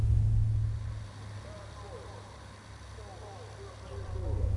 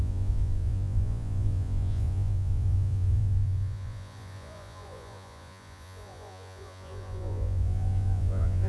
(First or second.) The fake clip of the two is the second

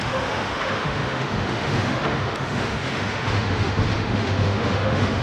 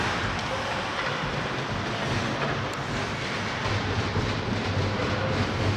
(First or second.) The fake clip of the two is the first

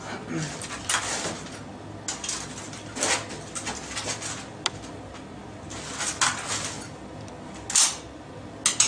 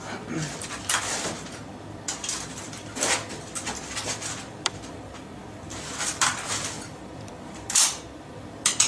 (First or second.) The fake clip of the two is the second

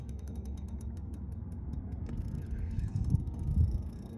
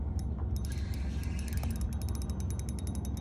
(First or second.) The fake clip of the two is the first